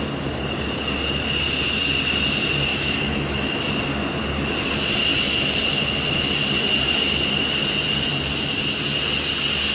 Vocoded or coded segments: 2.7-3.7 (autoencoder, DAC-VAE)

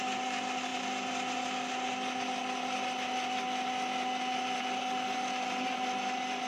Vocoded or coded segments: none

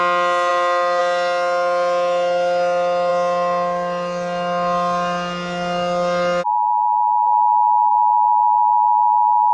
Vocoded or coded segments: none